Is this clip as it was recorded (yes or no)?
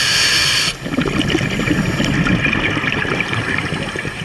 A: yes